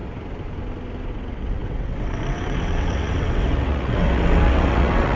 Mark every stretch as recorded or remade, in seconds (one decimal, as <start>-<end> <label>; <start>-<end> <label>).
0.0-1.1 recorded; 1.1-5.2 remade